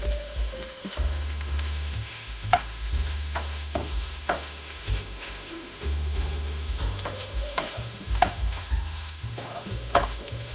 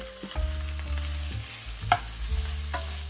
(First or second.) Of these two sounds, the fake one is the first